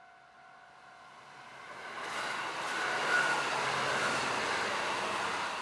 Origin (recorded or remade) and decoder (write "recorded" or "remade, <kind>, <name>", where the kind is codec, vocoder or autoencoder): recorded